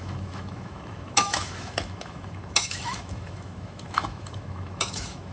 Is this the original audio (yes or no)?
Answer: no